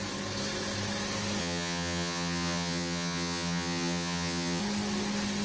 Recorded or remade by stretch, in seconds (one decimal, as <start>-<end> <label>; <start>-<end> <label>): 0.0-1.4 recorded; 1.4-4.6 remade; 4.6-5.4 recorded